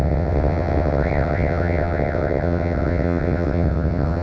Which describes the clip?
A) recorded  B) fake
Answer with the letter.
B